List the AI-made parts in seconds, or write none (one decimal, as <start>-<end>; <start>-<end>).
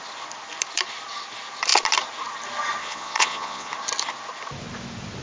2.8-3.7